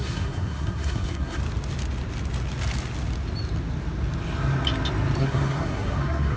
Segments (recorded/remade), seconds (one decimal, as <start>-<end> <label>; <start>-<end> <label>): 0.0-1.4 remade; 1.4-5.2 recorded; 5.2-6.4 remade